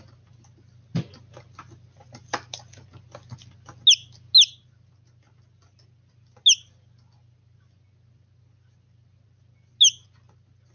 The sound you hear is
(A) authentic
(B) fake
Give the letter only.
A